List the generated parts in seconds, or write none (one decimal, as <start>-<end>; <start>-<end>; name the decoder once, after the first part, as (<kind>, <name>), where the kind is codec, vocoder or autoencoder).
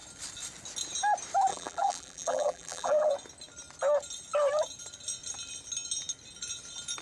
1.5-3.1 (vocoder, BigVGAN v2)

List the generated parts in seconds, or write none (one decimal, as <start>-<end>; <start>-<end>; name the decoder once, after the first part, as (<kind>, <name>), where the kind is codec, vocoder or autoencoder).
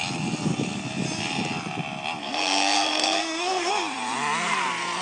2.2-3.7 (codec, SNAC)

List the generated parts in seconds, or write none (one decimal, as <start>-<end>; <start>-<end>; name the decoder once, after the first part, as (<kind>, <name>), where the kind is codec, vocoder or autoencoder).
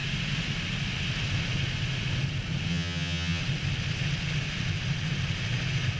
2.7-3.4 (vocoder, HiFi-GAN)